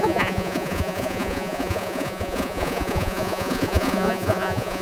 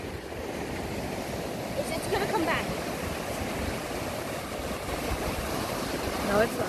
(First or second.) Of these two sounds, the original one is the second